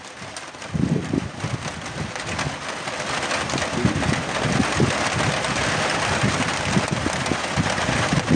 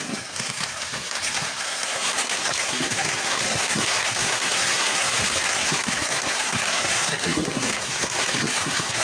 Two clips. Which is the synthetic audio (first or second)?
second